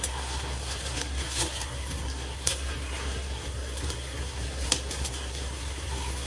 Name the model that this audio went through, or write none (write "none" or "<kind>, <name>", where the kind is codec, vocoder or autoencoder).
codec, SNAC